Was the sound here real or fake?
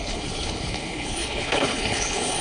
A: fake